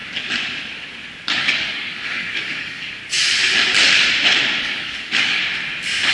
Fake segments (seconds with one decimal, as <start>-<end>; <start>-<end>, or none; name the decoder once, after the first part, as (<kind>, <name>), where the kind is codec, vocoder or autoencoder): 1.4-3.0 (codec, DAC); 4.6-5.4